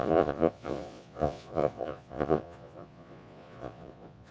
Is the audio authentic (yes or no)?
no